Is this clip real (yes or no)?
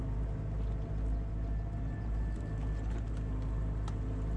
yes